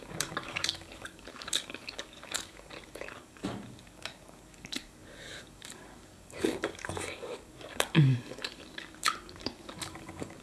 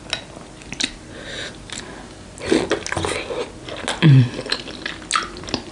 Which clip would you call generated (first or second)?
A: first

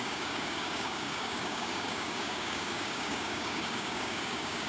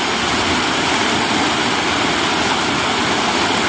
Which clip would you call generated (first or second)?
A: first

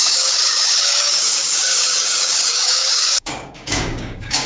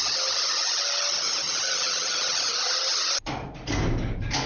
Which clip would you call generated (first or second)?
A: first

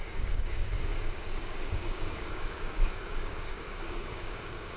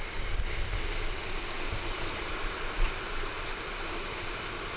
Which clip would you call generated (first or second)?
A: first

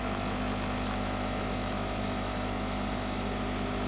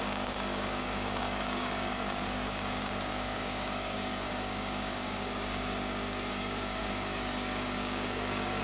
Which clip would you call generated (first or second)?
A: second